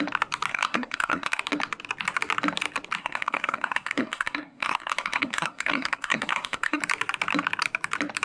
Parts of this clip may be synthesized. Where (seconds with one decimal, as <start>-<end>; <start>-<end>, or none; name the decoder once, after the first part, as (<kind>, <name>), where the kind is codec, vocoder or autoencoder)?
0.5-1.4 (codec, SNAC); 3.0-6.8